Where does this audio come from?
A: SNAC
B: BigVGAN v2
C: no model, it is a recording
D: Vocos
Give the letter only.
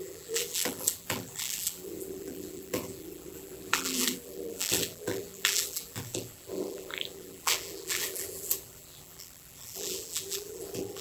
B